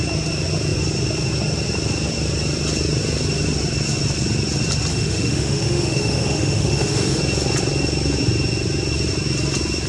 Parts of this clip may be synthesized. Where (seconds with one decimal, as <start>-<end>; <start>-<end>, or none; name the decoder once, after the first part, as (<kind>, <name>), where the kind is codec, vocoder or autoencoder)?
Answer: 4.9-7.2 (autoencoder, DAC-VAE)